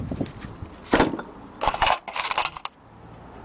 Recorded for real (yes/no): yes